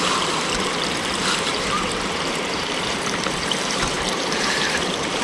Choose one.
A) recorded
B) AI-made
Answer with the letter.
B